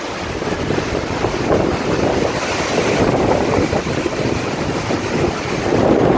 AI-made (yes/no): no